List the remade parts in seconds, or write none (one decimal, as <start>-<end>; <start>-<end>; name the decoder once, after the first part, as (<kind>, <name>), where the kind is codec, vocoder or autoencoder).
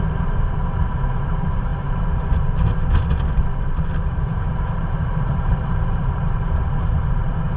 0.0-7.6 (vocoder, BigVGAN v2)